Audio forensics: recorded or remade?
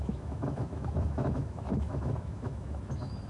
remade